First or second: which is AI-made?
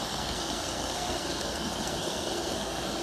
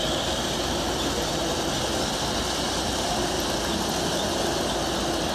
first